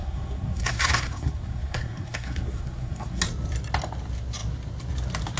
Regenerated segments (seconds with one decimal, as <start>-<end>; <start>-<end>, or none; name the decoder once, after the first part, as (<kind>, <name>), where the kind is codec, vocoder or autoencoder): 0.0-3.2 (codec, SNAC)